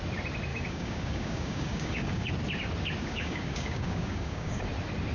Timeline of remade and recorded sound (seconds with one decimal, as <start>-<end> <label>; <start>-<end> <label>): 0.0-0.5 recorded; 0.5-2.3 remade; 2.3-3.0 recorded; 3.0-4.6 remade; 4.6-5.1 recorded